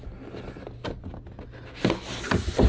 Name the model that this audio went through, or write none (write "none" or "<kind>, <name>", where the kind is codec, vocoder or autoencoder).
none